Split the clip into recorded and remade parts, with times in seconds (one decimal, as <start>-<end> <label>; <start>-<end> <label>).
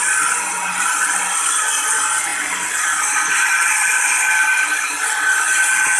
0.0-6.0 recorded